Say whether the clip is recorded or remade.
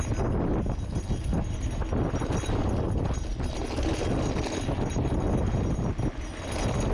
recorded